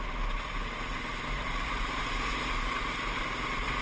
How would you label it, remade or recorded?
recorded